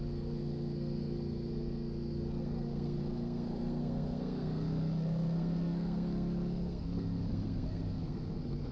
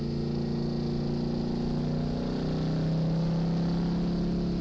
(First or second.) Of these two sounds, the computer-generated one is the first